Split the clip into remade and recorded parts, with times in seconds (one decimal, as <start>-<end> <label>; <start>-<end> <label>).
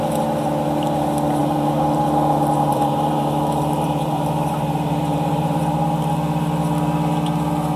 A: 0.0-1.4 recorded; 1.4-5.6 remade; 5.6-7.8 recorded